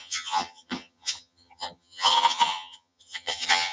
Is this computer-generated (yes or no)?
yes